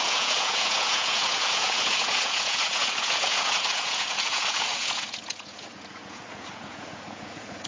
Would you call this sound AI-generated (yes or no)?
yes